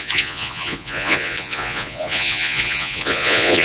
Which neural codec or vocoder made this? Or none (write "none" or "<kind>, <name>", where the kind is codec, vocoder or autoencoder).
vocoder, Vocos